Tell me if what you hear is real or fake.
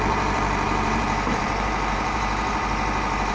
fake